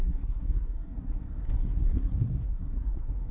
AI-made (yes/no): yes